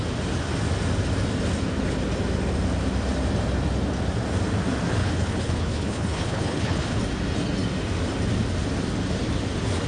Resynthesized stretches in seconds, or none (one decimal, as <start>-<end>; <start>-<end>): 5.0-7.0